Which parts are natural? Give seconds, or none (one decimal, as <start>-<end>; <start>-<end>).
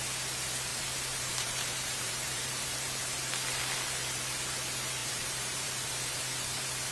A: 0.0-0.7; 3.0-5.0; 6.2-6.9